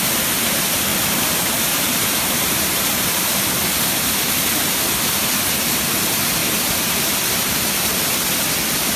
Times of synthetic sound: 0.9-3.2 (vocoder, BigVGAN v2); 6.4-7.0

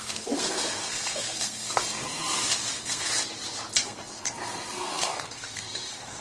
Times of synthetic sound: 0.0-3.1 (codec, SNAC); 3.9-6.2

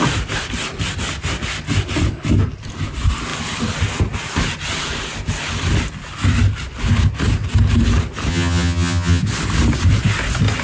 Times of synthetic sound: 8.3-9.2 (vocoder, HiFi-GAN)